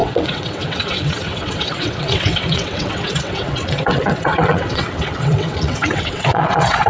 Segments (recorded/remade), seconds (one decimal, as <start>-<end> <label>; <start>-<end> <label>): 0.0-6.9 remade